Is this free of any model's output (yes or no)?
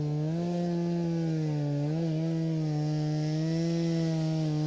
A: yes